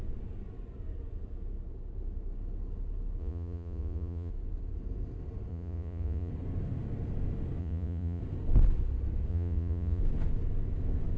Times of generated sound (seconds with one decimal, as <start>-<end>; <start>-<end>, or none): 3.2-4.3; 5.5-6.3; 7.6-8.2; 9.3-10.0